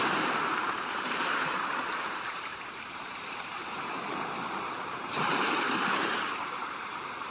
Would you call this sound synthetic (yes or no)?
yes